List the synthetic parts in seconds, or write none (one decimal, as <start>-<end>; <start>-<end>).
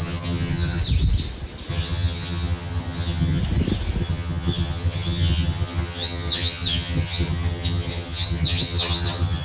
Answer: 0.0-0.8; 1.7-3.4; 4.0-9.4